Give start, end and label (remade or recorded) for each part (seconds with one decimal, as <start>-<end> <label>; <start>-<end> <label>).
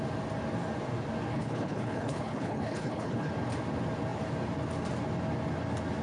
0.0-1.3 recorded; 1.3-3.3 remade; 3.3-6.0 recorded